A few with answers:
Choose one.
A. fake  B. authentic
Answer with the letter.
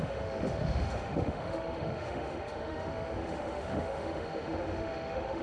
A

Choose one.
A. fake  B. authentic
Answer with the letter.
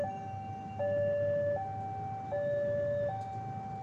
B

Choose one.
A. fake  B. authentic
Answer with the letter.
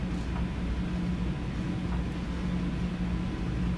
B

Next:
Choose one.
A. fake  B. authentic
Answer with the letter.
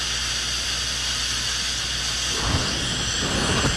B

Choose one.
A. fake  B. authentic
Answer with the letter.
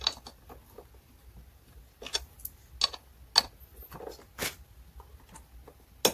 B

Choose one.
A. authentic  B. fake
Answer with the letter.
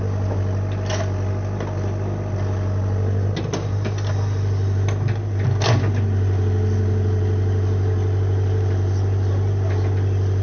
A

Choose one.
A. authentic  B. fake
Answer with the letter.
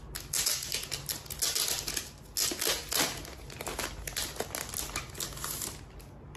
A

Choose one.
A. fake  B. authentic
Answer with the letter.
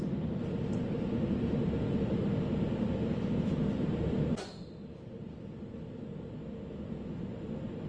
B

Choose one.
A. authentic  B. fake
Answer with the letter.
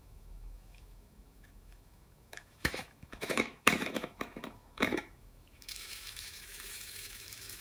B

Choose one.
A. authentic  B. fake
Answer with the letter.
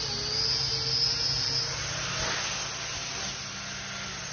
A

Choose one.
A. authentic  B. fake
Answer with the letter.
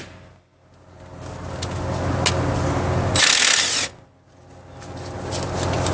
A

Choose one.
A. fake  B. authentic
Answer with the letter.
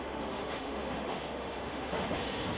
A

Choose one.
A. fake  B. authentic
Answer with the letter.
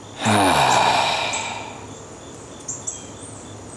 B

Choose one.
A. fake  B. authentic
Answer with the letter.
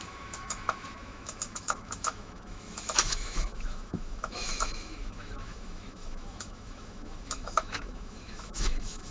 A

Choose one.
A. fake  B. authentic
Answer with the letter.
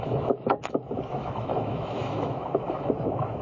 A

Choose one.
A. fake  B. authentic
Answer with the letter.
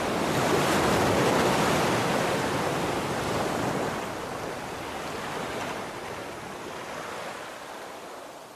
B